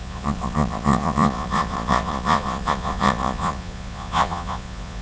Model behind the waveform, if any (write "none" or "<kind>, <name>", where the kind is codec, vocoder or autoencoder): vocoder, Vocos